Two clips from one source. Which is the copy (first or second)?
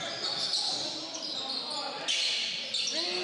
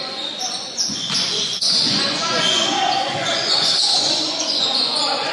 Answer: second